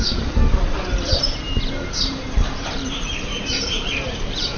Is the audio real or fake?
fake